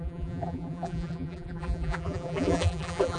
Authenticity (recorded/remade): remade